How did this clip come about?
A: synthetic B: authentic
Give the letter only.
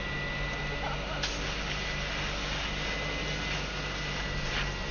B